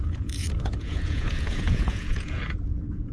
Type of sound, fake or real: fake